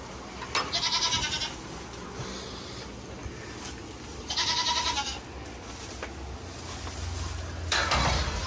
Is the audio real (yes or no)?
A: yes